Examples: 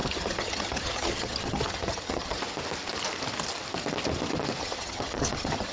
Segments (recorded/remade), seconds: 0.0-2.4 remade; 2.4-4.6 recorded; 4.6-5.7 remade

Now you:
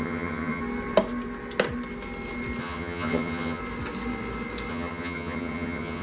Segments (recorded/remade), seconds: 0.0-0.6 remade; 0.6-2.6 recorded; 2.6-3.6 remade; 3.6-4.7 recorded; 4.7-6.0 remade

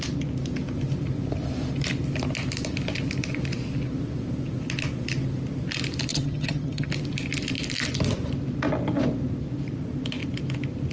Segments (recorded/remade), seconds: 0.0-6.1 recorded; 6.1-6.9 remade; 6.9-10.9 recorded

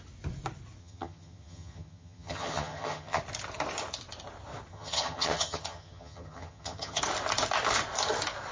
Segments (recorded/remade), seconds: 0.0-0.8 recorded; 0.8-3.2 remade; 3.2-4.7 recorded; 4.7-7.0 remade; 7.0-8.5 recorded

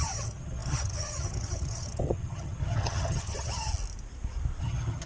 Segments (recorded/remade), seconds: 0.0-3.7 remade; 3.7-4.6 recorded; 4.6-5.1 remade

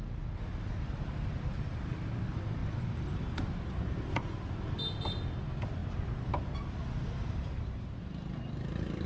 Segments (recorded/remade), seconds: 0.0-9.1 recorded

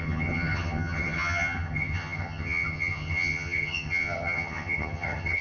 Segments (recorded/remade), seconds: 0.0-5.4 remade

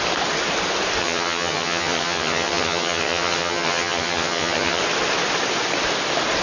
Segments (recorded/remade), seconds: 0.0-1.0 recorded; 1.0-4.8 remade; 4.8-6.4 recorded